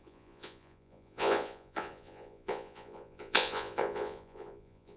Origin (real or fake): fake